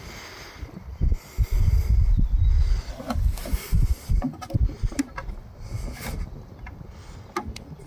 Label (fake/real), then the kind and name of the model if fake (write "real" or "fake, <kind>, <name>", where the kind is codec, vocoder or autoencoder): real